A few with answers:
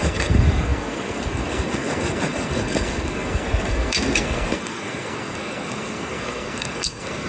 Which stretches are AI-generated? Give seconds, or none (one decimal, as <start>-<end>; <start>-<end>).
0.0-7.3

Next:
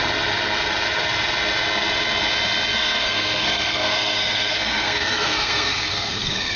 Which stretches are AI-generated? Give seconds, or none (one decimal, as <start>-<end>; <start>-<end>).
2.7-6.6

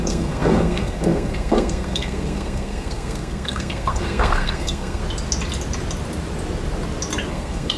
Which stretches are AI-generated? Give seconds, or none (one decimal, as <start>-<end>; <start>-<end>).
0.0-5.0; 7.3-7.8

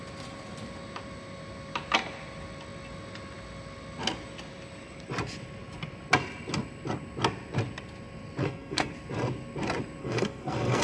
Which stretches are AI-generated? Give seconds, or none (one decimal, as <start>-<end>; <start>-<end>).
8.4-8.9; 10.0-10.8

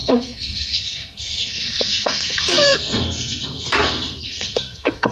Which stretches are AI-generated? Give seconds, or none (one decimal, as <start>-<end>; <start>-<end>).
0.0-5.1

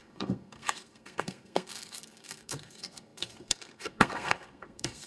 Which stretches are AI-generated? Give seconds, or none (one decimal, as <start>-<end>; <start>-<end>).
0.0-5.1

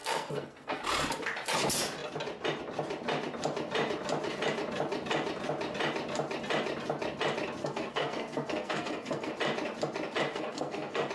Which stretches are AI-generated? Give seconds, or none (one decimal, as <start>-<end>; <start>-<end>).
0.0-0.8; 7.6-9.3; 10.3-11.1

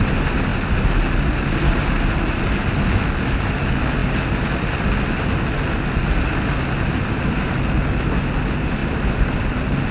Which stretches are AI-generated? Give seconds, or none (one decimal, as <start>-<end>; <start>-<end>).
none